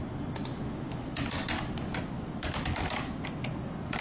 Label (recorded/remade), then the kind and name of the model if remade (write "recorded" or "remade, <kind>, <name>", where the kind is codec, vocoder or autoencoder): recorded